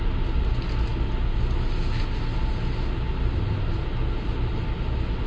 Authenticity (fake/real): real